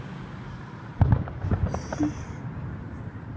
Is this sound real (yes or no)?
yes